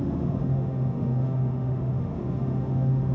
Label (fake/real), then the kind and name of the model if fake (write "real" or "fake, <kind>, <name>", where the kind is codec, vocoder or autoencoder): fake, autoencoder, DAC-VAE